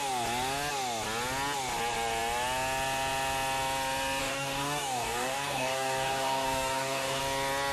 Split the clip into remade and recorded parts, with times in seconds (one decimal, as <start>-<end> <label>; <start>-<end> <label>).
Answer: 0.0-4.2 recorded; 4.2-7.2 remade; 7.2-7.7 recorded